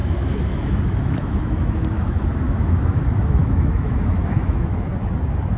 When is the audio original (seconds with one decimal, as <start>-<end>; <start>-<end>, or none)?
4.9-5.6